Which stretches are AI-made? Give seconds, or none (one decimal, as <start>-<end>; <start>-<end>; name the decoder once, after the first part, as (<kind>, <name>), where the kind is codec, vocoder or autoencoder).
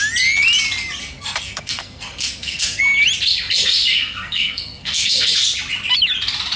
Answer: 1.0-2.8 (codec, SNAC); 3.9-5.3